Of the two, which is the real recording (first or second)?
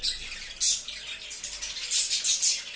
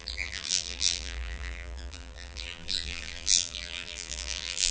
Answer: first